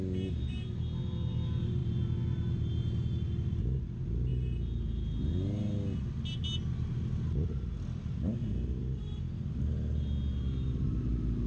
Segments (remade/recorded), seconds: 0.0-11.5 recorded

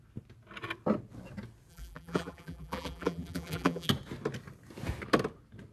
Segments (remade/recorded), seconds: 0.0-1.7 recorded; 1.7-3.9 remade; 3.9-5.7 recorded

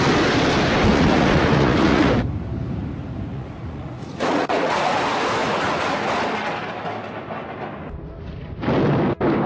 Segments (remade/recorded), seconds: 0.0-0.9 recorded; 0.9-2.1 remade; 2.1-3.3 recorded; 3.3-5.0 remade; 5.0-5.4 recorded; 5.4-6.1 remade; 6.1-9.5 recorded

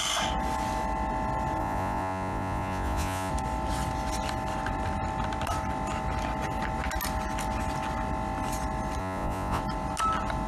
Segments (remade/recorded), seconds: 0.0-1.6 recorded; 1.6-3.3 remade; 3.3-9.0 recorded; 9.0-9.6 remade; 9.6-10.5 recorded

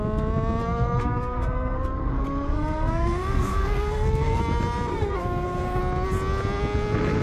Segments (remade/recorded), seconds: 0.0-0.6 recorded; 0.6-4.4 remade; 4.4-4.9 recorded; 4.9-5.8 remade; 5.8-7.2 recorded